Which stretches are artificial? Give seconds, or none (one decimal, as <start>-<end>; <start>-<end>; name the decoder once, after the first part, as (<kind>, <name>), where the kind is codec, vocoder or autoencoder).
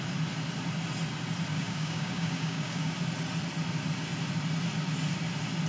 1.5-2.9 (codec, DAC)